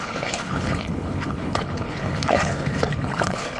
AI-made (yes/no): yes